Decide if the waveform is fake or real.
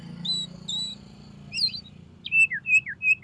real